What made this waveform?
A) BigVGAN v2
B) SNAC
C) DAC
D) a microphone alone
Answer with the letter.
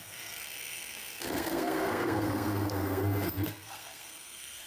B